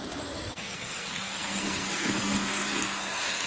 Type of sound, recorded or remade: remade